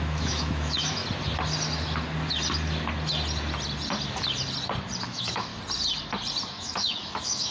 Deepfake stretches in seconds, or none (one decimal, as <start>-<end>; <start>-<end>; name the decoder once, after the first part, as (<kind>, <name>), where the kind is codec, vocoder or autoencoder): 0.0-1.0 (autoencoder, DAC-VAE); 5.0-5.5; 6.5-7.5

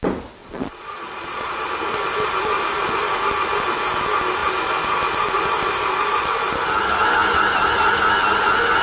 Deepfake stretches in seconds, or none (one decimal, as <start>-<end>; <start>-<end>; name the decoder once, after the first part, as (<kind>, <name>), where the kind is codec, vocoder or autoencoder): 0.4-1.7 (vocoder, Vocos)